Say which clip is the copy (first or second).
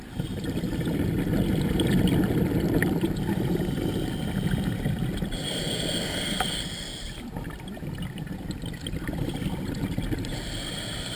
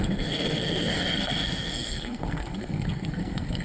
second